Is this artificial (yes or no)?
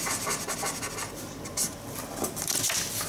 no